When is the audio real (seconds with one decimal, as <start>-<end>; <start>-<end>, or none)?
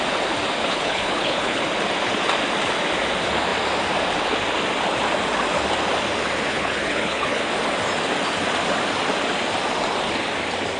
0.0-0.6; 1.6-6.5; 7.4-10.8